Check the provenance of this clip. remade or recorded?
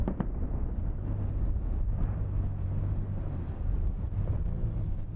recorded